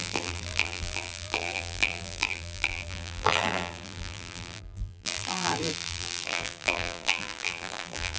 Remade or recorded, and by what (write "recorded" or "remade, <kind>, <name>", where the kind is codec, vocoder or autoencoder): remade, vocoder, BigVGAN v2